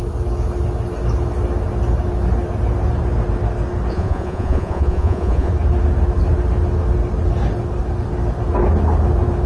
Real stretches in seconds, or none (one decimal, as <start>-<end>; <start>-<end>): 0.0-3.9; 5.5-9.5